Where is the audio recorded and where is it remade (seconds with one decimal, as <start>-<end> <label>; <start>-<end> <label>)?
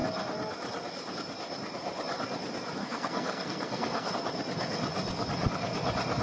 0.0-2.8 recorded; 2.8-4.1 remade; 4.1-6.2 recorded